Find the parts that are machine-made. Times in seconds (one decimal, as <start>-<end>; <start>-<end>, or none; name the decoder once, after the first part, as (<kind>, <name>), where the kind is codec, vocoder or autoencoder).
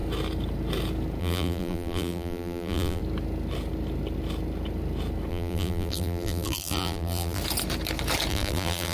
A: 1.2-3.0 (vocoder, BigVGAN v2); 5.3-7.4; 8.3-8.9